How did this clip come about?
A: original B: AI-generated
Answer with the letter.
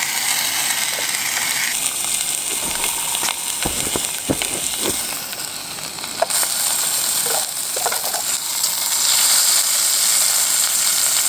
A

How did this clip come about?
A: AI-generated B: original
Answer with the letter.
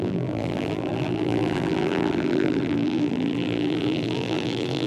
A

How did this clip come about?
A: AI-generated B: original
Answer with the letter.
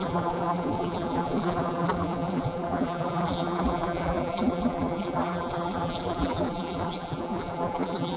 A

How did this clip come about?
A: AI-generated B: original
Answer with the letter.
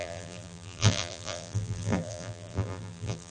A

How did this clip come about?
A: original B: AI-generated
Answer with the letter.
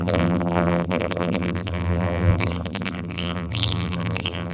B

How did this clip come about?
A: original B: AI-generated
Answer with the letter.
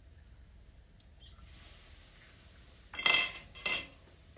A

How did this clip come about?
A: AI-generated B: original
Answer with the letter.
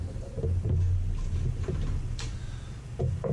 A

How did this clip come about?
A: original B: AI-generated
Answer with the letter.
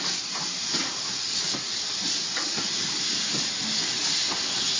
A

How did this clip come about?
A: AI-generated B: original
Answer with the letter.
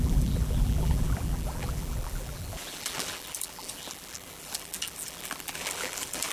A